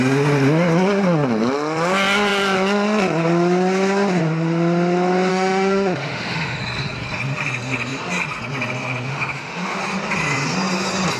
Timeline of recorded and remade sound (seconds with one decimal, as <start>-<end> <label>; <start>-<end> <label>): 0.0-5.3 recorded; 5.3-6.6 remade; 6.6-9.1 recorded; 9.1-9.8 remade; 9.8-11.2 recorded